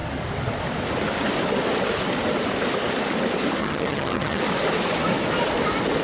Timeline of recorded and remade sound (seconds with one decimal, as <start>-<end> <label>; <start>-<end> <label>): 0.0-3.6 recorded; 3.6-4.4 remade; 4.4-6.0 recorded